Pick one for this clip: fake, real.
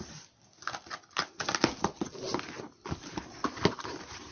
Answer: real